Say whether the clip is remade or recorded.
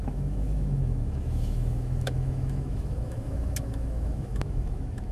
remade